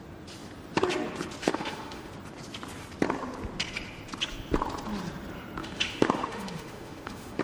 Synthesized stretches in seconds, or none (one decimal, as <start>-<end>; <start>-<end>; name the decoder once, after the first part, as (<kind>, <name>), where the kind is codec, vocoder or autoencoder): 1.4-2.1 (autoencoder, DAC-VAE); 5.6-7.4